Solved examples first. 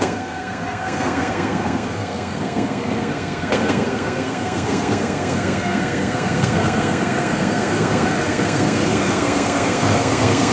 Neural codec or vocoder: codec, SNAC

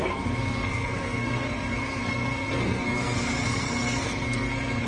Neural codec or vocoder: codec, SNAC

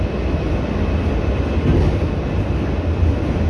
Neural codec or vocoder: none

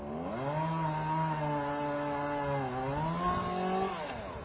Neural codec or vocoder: none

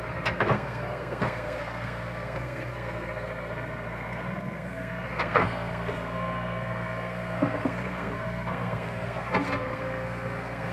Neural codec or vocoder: codec, SNAC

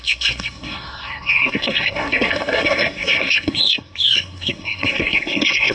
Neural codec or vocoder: codec, SNAC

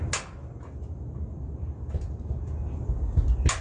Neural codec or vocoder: none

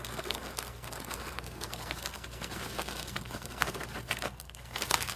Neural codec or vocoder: codec, SNAC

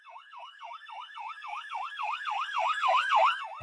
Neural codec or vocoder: codec, SNAC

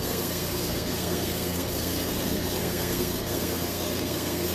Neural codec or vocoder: codec, SNAC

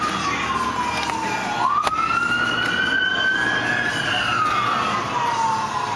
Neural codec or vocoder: none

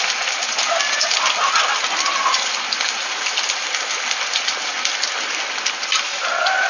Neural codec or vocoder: none